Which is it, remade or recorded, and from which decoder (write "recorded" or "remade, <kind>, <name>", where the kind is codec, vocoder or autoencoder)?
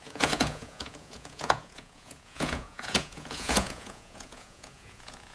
remade, vocoder, Vocos